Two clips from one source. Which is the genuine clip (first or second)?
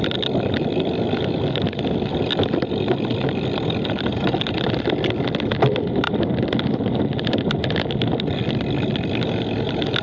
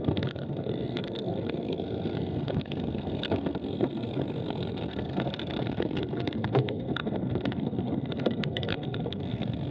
first